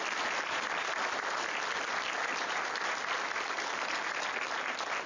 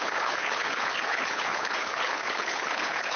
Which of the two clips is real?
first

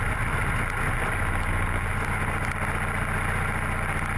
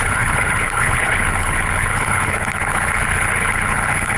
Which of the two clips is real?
first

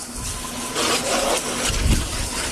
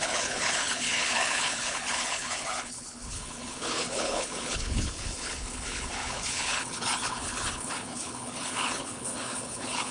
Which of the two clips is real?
first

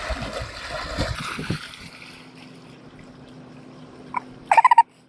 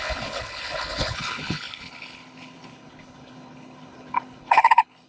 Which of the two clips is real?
first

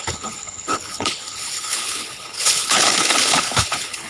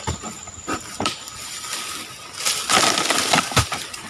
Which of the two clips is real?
second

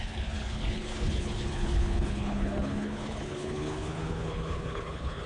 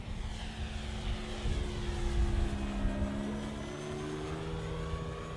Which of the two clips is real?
second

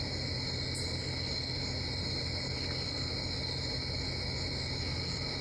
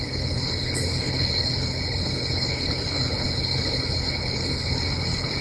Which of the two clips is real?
first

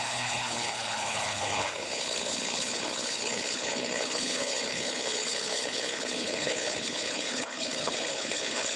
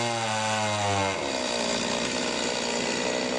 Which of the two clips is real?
second